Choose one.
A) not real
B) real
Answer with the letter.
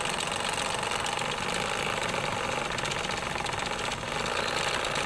B